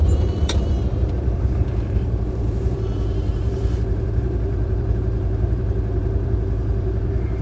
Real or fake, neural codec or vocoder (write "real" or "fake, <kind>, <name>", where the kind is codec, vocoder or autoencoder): fake, vocoder, BigVGAN v2